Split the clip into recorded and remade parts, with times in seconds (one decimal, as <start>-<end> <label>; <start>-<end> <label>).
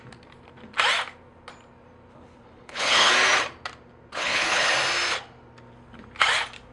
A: 0.0-2.1 recorded; 2.1-3.1 remade; 3.1-4.1 recorded; 4.1-4.7 remade; 4.7-6.7 recorded